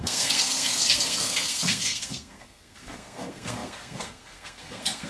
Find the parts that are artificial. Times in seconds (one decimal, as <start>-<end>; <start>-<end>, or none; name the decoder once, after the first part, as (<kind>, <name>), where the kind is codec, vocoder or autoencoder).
0.0-5.1 (codec, SNAC)